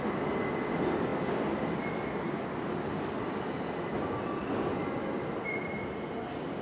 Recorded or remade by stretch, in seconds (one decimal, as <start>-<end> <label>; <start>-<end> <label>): 0.0-6.6 recorded